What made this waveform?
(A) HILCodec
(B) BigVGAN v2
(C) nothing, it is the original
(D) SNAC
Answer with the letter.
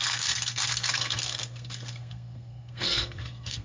D